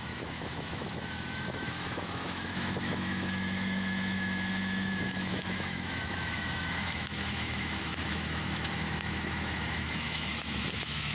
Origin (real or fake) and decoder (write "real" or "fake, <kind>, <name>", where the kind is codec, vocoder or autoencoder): fake, autoencoder, DAC-VAE